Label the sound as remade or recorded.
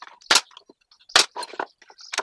recorded